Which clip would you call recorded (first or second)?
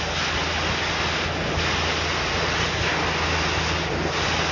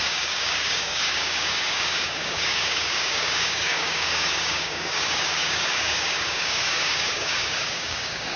first